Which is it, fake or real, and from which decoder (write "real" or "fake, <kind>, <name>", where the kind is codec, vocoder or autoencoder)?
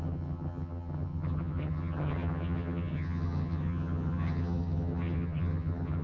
fake, vocoder, HiFi-GAN